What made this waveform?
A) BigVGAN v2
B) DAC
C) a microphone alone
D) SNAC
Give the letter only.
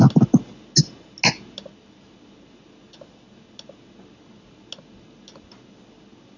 C